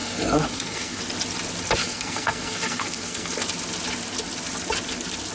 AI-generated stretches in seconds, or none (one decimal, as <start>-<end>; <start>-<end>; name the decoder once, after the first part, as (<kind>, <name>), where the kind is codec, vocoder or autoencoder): 0.0-1.0 (codec, SNAC); 1.8-3.3